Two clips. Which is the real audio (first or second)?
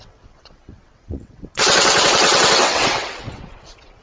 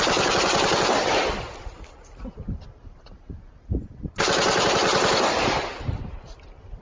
second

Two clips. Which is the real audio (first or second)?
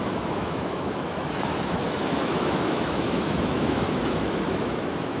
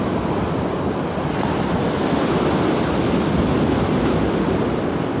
second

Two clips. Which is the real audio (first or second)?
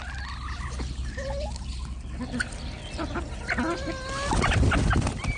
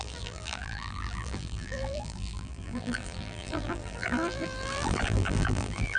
first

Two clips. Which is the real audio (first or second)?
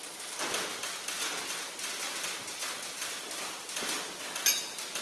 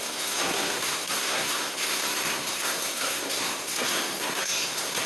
first